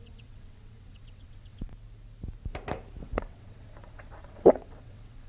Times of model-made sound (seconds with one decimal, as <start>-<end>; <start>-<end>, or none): 0.0-1.7; 3.0-5.3